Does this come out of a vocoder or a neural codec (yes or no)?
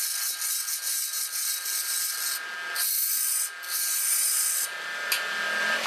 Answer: no